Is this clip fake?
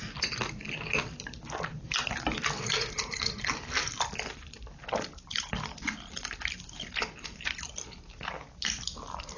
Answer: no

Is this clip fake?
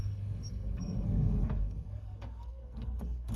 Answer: yes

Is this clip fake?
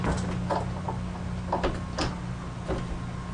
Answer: no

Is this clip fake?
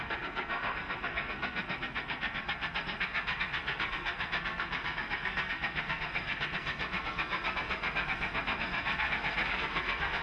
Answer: yes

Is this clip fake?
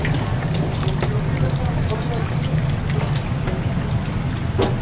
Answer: no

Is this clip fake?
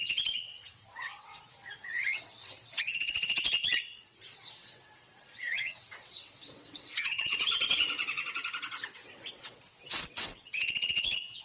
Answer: yes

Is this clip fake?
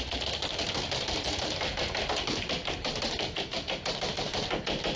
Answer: yes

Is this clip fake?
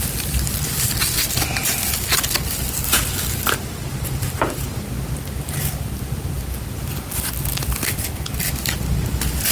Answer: no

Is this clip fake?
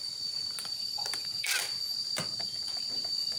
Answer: yes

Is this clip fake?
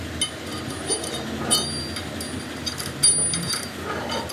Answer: no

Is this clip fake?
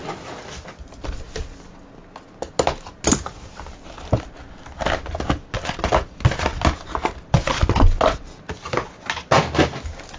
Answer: no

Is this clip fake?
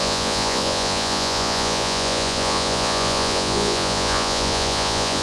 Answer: yes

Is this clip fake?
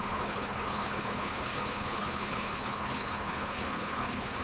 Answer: yes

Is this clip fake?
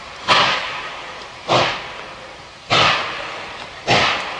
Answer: no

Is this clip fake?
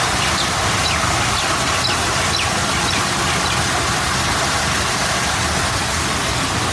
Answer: no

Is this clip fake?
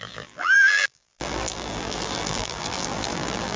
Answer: yes